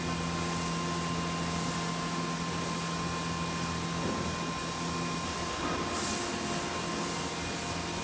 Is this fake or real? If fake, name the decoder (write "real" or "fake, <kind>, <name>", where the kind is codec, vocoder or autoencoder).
real